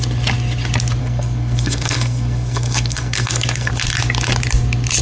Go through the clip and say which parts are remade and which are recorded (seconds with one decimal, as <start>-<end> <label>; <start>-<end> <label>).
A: 0.0-1.0 recorded; 1.0-3.7 remade; 3.7-5.0 recorded